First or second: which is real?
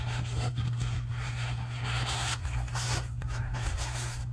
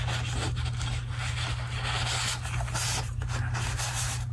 second